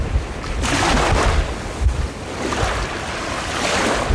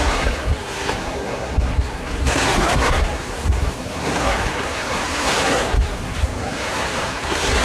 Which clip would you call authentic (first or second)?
first